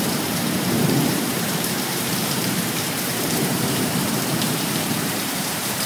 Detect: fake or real fake